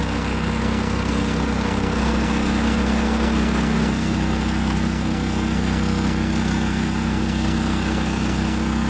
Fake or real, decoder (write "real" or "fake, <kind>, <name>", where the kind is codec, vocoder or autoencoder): fake, codec, SNAC